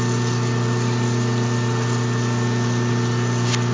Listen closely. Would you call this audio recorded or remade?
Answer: recorded